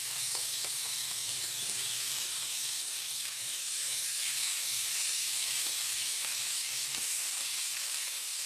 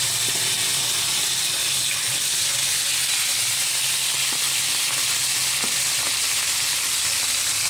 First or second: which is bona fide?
second